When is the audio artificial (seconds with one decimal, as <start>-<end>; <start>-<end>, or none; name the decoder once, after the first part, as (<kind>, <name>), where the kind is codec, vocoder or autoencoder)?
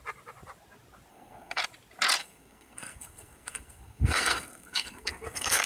1.1-1.6 (codec, SNAC); 2.2-5.7